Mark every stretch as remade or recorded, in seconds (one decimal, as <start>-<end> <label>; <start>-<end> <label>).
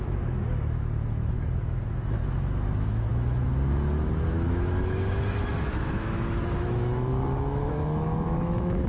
0.0-3.5 remade; 3.5-4.2 recorded; 4.2-8.9 remade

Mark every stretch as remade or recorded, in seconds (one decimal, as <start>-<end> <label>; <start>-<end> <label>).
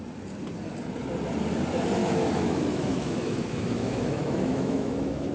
0.0-2.0 recorded; 2.0-5.3 remade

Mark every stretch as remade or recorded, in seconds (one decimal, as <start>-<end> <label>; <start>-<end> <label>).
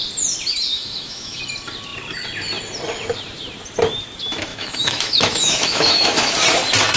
0.0-0.7 recorded; 0.7-1.4 remade; 1.4-4.5 recorded; 4.5-6.3 remade; 6.3-7.0 recorded